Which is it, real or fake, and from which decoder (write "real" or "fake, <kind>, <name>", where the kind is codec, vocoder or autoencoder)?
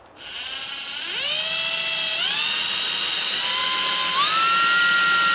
real